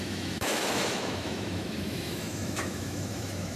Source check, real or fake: fake